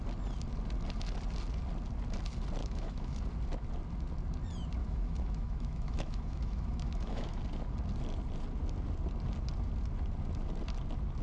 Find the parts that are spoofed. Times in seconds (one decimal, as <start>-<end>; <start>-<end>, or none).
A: 2.6-3.2; 4.8-7.4